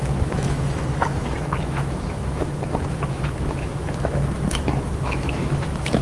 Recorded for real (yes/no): no